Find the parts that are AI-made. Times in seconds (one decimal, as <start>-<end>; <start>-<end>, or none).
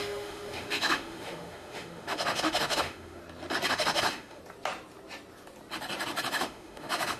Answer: 0.0-3.2; 3.7-4.4; 6.3-7.2